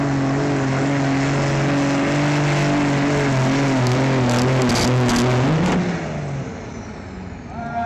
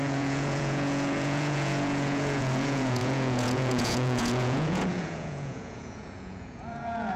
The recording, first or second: first